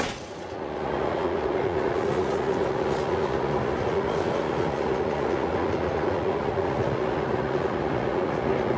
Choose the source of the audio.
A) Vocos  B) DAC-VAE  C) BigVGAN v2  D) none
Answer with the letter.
A